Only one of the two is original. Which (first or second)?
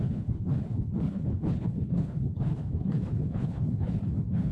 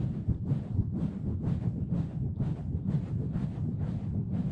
second